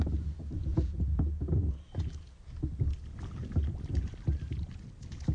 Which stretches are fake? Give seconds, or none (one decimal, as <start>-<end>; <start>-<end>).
0.7-1.7